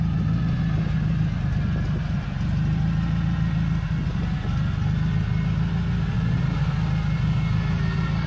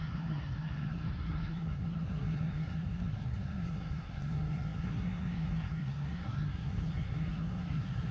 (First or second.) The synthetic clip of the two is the second